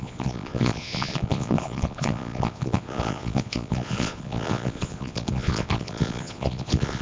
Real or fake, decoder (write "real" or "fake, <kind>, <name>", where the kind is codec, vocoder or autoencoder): fake, vocoder, Vocos